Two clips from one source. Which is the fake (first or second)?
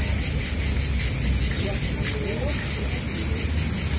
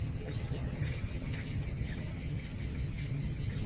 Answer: second